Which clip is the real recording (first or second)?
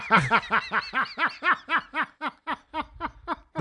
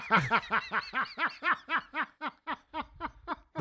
first